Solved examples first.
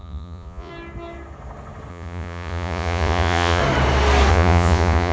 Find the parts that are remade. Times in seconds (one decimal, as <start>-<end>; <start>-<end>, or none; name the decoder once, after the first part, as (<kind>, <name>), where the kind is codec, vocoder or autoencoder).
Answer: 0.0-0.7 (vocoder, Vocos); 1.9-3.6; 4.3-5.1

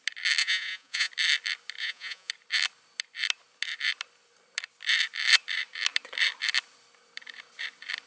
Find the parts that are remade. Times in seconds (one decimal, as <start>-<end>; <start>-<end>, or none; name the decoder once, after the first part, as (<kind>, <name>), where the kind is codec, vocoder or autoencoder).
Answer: 0.4-1.1 (vocoder, Vocos); 1.8-2.3

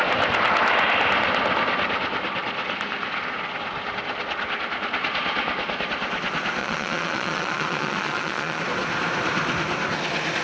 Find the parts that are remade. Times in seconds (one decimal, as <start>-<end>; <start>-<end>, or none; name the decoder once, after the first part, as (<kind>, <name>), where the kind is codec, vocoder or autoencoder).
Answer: 6.6-8.6 (vocoder, Vocos)

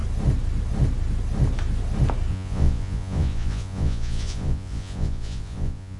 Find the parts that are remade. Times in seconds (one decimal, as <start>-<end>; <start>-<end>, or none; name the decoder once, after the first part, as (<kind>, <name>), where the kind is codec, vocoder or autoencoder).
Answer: 2.3-6.0 (vocoder, Vocos)

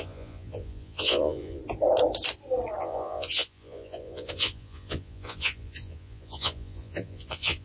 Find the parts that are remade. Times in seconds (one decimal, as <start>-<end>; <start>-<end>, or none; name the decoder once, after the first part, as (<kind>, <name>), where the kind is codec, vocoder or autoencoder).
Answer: 0.0-1.6 (vocoder, Vocos); 2.8-7.6

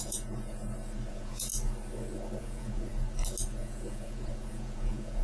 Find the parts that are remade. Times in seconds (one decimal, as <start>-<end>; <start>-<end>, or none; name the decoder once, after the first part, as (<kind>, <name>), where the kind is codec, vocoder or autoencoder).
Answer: 0.0-0.6 (vocoder, Vocos); 1.1-1.5; 2.4-2.9; 3.5-5.2

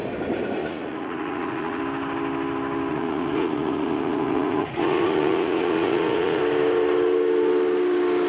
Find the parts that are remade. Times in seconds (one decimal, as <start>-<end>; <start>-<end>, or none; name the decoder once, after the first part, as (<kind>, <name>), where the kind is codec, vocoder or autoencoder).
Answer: 0.6-1.8 (vocoder, Vocos); 2.9-6.4